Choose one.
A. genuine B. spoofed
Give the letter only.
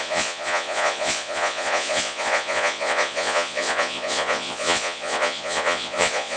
B